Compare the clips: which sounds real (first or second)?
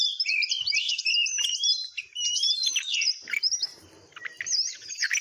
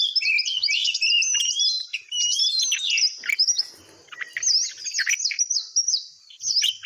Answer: second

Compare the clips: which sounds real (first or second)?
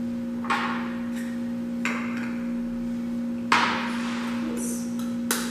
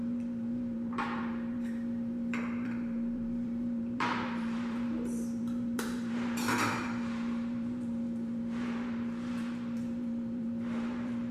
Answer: first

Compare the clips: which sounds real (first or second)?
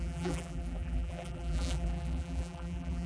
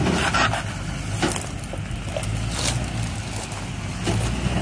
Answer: second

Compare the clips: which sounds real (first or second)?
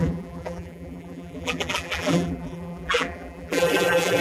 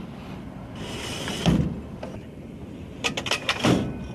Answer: second